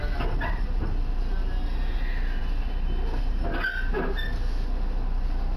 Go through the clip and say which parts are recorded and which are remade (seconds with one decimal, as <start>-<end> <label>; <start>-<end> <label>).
0.0-5.6 recorded